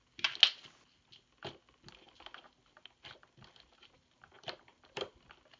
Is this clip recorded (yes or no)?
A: yes